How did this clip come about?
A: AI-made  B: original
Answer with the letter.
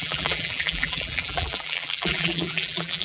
A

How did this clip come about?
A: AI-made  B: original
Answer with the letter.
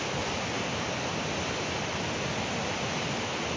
B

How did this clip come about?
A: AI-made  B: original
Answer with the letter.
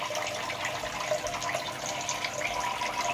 B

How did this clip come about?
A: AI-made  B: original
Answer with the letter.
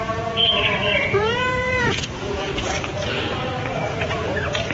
A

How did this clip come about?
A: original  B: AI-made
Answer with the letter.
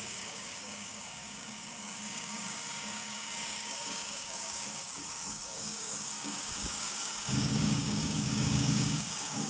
B